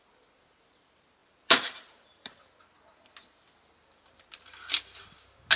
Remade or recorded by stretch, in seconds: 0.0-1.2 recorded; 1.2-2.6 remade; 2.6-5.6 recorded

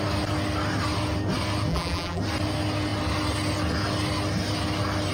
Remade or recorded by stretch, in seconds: 0.0-1.7 recorded; 1.7-2.2 remade; 2.2-5.1 recorded

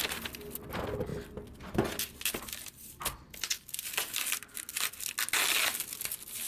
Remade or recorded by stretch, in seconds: 0.0-6.5 recorded